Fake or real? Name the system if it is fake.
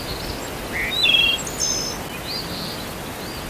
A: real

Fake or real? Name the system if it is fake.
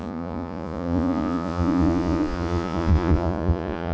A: fake, vocoder, Vocos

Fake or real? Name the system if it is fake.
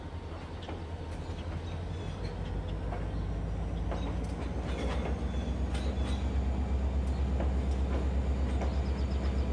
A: real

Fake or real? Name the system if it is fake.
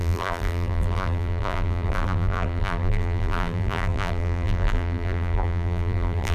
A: fake, vocoder, BigVGAN v2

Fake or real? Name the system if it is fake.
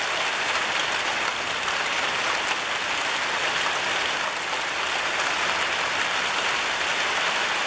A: real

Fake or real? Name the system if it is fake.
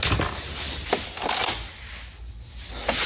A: real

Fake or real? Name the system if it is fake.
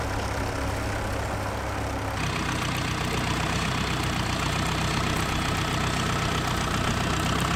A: real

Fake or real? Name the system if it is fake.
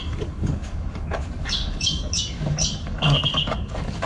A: fake, codec, DAC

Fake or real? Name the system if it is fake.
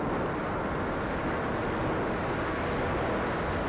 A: real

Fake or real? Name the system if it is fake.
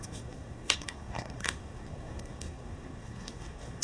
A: fake, codec, SNAC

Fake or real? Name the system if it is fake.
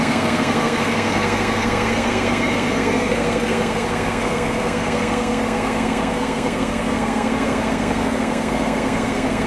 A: fake, codec, SNAC